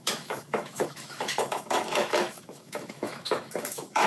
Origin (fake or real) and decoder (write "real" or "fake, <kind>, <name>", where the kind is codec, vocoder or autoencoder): fake, autoencoder, DAC-VAE